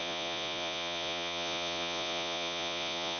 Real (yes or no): no